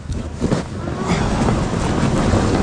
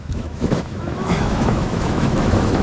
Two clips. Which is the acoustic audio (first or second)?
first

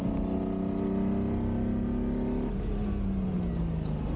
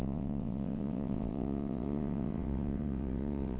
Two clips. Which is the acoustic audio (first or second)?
first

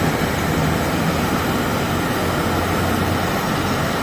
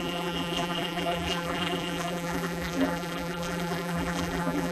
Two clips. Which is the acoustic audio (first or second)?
first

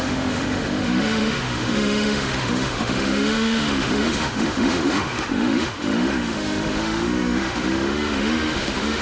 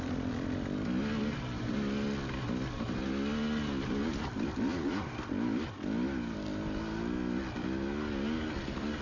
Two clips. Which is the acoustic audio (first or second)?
second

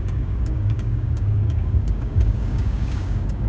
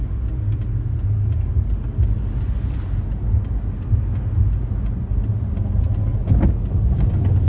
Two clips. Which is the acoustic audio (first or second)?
second